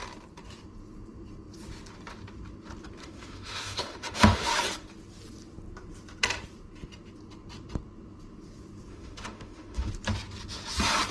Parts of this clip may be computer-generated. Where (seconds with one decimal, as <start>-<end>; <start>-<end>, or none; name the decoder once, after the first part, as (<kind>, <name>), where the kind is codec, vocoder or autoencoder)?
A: 3.0-4.5 (autoencoder, DAC-VAE); 8.9-9.9